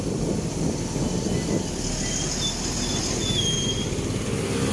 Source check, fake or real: real